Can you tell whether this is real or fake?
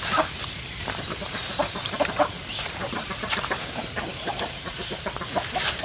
fake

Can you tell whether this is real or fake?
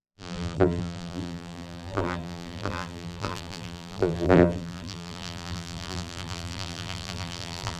fake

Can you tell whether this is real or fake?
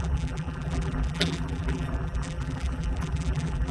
fake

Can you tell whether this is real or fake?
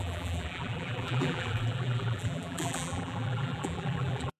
fake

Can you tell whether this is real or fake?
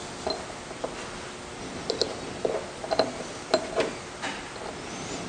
real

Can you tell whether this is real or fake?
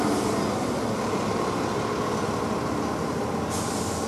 real